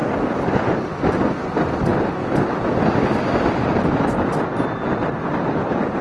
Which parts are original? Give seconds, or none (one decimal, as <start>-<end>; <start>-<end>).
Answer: 0.0-6.0